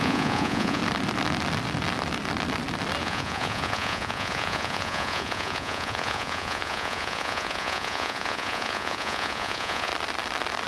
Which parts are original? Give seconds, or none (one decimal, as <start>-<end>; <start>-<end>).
0.8-3.0; 9.9-10.7

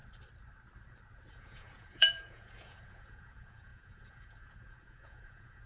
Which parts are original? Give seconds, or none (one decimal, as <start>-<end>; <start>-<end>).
0.0-1.3